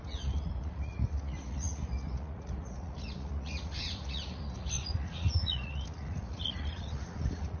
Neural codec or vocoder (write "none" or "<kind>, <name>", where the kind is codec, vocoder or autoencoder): vocoder, Vocos